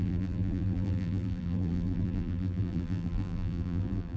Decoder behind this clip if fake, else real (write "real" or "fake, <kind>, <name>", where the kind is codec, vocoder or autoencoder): fake, vocoder, BigVGAN v2